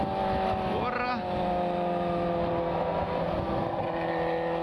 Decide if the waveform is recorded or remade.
recorded